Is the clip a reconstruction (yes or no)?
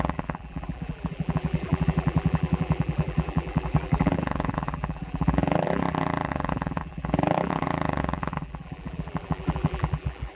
yes